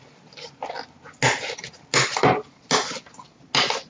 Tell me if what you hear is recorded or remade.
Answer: recorded